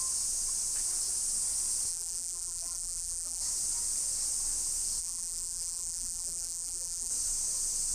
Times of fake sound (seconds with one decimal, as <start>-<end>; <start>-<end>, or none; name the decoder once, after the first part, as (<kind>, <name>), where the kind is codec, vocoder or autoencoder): 1.9-3.4 (vocoder, BigVGAN v2); 5.0-7.1